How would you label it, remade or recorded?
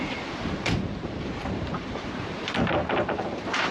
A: remade